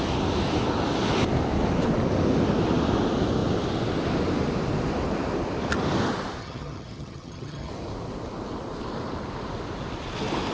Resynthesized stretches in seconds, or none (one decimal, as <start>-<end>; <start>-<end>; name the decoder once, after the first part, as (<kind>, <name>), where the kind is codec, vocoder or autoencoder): 6.4-7.7 (vocoder, HiFi-GAN)